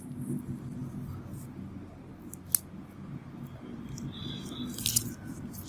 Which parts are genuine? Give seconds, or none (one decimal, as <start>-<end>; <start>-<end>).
0.0-5.7